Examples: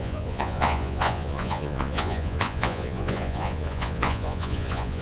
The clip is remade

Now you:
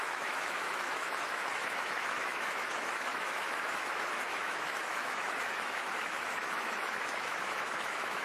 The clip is remade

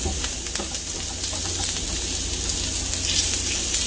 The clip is recorded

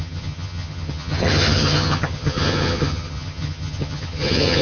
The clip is remade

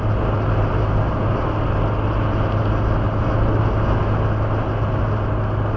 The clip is recorded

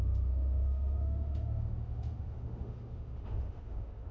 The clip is remade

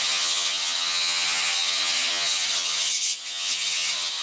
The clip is remade